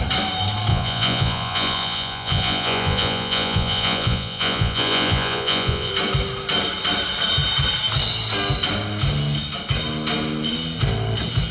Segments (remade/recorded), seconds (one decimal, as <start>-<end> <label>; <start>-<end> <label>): 0.0-0.7 recorded; 0.7-5.9 remade; 5.9-11.5 recorded